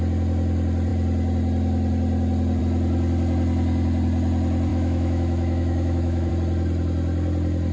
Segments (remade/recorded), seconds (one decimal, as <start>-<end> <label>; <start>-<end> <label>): 0.0-4.7 recorded; 4.7-6.3 remade; 6.3-7.7 recorded